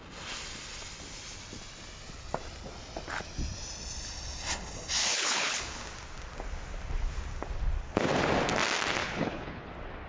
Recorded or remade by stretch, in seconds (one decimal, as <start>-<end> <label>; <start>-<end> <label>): 0.0-5.0 recorded; 5.0-5.8 remade; 5.8-9.0 recorded; 9.0-9.7 remade; 9.7-10.1 recorded